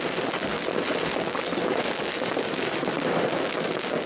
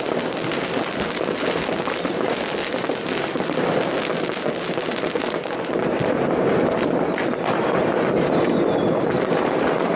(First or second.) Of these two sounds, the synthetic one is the second